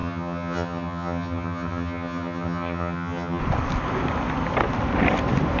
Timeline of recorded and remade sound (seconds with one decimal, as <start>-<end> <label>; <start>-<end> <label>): 0.0-3.4 remade; 3.4-5.6 recorded